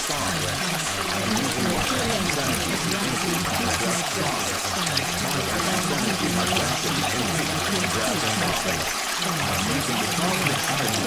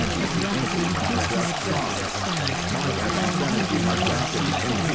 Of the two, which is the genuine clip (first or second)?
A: second